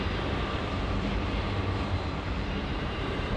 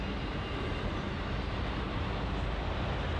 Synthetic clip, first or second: first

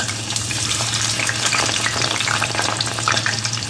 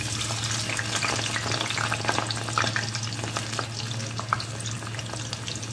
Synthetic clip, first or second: first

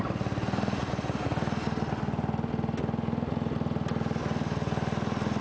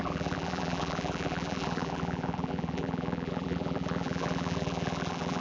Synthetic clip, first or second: second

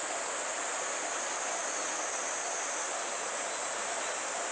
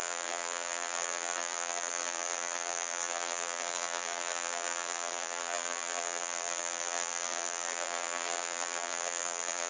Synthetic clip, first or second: second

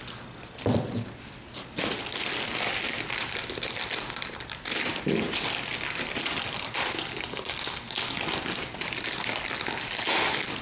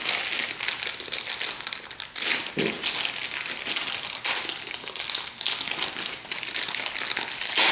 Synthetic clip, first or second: first